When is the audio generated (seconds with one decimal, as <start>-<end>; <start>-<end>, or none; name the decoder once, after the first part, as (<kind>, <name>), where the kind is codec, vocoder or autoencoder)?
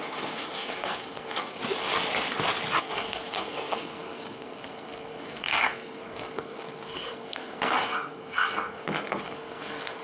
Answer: 0.0-1.6 (codec, SNAC); 2.8-10.0